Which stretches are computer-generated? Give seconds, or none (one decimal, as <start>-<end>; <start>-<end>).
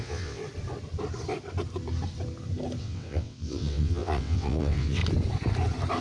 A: 0.0-0.4; 2.8-5.0